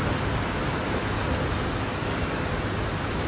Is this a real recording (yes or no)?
yes